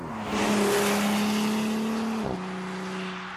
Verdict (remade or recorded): recorded